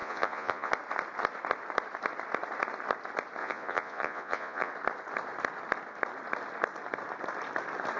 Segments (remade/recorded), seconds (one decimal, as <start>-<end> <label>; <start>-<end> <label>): 0.0-0.7 remade; 0.7-3.4 recorded; 3.4-4.7 remade; 4.7-8.0 recorded